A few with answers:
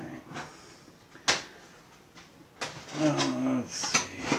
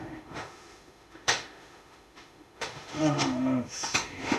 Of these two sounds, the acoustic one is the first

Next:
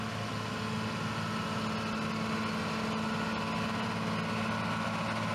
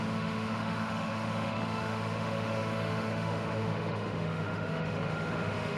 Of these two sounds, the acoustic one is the first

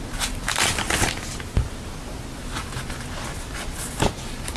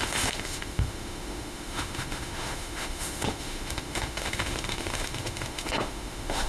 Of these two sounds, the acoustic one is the first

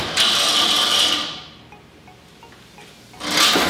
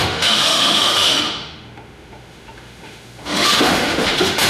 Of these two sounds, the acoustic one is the first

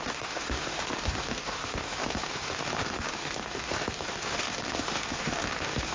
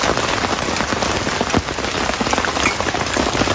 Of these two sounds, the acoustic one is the second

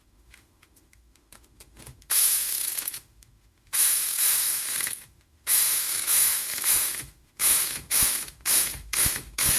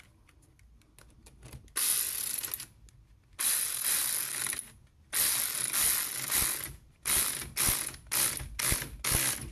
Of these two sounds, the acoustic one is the second